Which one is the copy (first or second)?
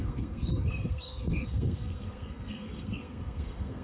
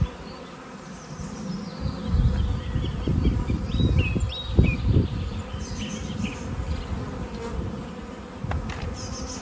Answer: first